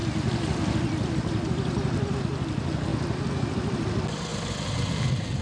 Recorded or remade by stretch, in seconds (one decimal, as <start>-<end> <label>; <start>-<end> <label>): 0.0-5.4 recorded